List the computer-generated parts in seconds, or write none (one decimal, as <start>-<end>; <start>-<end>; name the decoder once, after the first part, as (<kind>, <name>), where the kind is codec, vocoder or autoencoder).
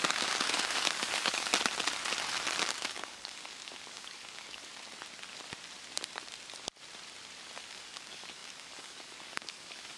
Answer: 0.0-1.5 (codec, DAC); 2.6-4.7; 7.6-10.0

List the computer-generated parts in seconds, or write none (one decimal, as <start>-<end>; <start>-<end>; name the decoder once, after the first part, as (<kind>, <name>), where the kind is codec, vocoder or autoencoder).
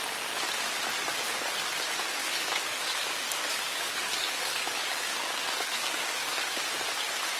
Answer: 2.2-6.6 (codec, DAC)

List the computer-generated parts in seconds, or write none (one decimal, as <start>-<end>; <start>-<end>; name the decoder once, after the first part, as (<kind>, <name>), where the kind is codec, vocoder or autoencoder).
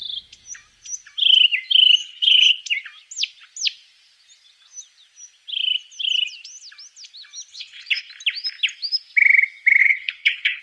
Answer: 2.0-2.6 (codec, HILCodec); 7.5-8.1; 9.8-10.6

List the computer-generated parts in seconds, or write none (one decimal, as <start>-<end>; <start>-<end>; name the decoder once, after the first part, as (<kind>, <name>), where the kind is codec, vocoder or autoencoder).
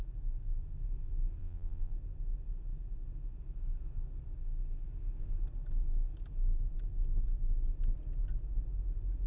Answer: 1.4-1.9 (vocoder, BigVGAN v2)